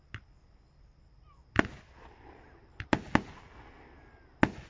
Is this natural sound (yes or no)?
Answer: yes